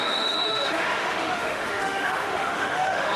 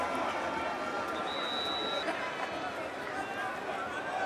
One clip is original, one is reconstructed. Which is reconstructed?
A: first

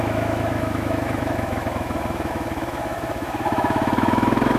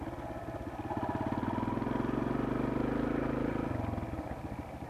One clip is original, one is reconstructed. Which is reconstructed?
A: first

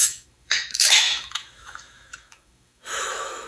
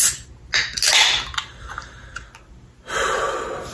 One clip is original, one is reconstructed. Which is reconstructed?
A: first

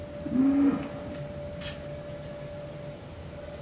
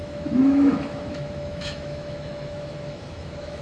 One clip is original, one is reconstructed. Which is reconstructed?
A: second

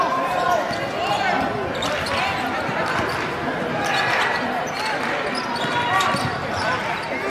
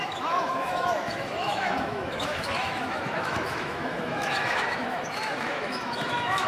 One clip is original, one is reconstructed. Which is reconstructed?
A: second